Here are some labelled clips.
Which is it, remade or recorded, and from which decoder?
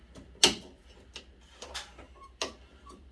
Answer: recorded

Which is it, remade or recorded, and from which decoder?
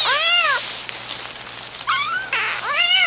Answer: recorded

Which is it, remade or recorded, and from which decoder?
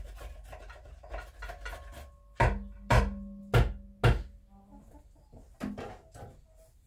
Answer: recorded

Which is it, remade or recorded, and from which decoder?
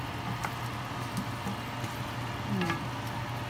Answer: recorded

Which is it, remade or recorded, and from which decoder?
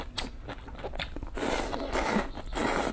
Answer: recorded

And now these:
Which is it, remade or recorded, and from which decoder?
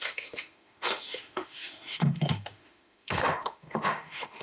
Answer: remade, autoencoder, DAC-VAE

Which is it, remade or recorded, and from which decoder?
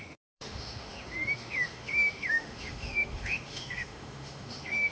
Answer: remade, autoencoder, DAC-VAE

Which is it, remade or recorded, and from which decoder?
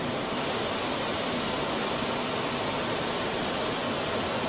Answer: recorded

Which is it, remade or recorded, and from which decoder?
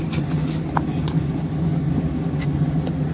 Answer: recorded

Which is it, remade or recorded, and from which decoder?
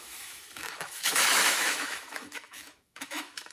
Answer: remade, autoencoder, DAC-VAE